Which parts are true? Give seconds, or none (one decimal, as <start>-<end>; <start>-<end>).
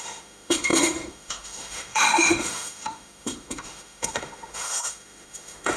none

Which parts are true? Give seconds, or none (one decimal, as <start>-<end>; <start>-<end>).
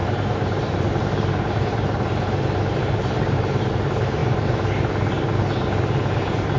3.7-4.2; 4.8-6.6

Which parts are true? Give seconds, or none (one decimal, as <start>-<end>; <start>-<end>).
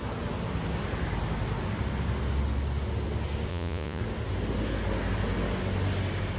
0.0-3.5; 4.0-6.4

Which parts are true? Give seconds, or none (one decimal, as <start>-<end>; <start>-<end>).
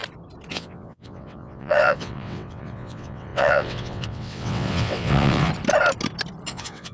0.0-0.5; 5.5-6.5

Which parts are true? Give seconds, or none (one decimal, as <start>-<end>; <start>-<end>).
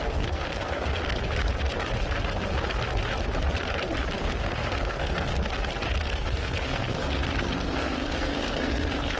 1.0-4.2; 5.3-6.0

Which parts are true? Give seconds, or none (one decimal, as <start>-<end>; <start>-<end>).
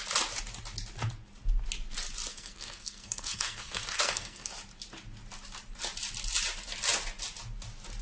0.0-2.3; 4.5-8.0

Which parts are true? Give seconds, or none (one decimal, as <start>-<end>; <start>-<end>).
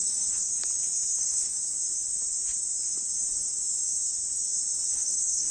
0.5-1.2; 1.6-4.9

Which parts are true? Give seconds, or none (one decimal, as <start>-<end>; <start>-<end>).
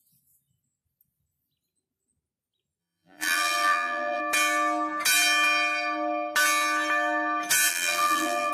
0.0-2.8; 4.2-7.7